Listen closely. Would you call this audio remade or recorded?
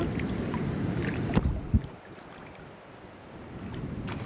recorded